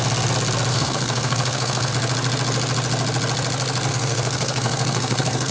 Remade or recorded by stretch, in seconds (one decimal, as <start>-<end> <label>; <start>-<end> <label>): 0.0-0.7 recorded; 0.7-1.9 remade; 1.9-3.9 recorded; 3.9-5.5 remade